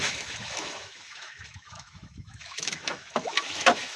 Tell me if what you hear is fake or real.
fake